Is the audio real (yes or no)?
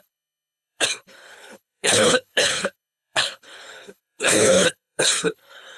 no